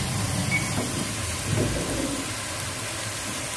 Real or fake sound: real